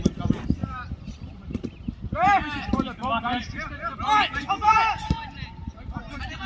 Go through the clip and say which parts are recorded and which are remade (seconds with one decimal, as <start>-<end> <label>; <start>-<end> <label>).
0.0-0.6 recorded; 0.6-4.5 remade; 4.5-6.5 recorded